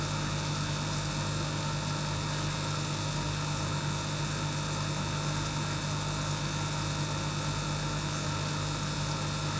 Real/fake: real